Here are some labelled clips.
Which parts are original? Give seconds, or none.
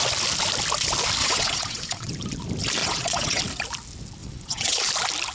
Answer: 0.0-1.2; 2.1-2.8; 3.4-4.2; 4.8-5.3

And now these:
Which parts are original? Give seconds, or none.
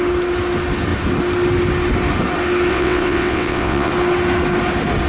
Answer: 0.0-2.7; 3.9-5.1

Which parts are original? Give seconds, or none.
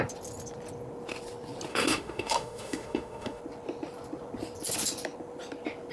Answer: 0.0-1.7; 3.4-5.9